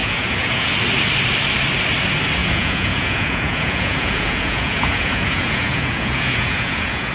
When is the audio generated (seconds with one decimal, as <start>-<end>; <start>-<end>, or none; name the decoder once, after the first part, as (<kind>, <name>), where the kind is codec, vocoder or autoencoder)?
0.0-0.7 (vocoder, Vocos); 2.4-7.1

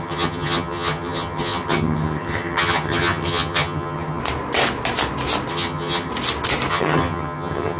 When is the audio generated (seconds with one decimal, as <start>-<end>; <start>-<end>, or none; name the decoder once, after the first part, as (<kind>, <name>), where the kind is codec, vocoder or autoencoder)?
0.0-4.2 (vocoder, HiFi-GAN); 5.5-6.1; 6.7-7.8

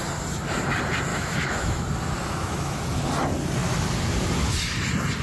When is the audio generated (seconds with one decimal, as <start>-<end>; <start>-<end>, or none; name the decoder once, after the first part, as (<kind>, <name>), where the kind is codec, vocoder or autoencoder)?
1.1-1.8 (autoencoder, DAC-VAE); 2.2-2.8